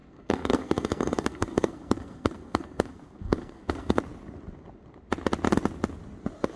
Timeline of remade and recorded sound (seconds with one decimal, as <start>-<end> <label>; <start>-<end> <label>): 0.0-4.0 remade; 4.0-6.6 recorded